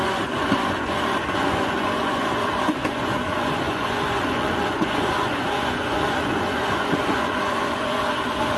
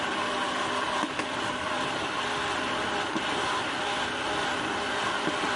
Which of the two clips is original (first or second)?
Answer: second